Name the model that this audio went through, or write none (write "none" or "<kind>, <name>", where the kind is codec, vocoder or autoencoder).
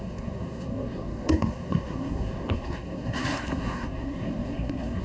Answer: codec, SNAC